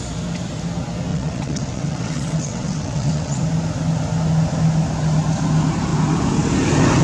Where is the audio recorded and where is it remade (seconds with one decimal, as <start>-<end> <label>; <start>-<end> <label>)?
0.0-1.1 recorded; 1.1-3.4 remade; 3.4-7.0 recorded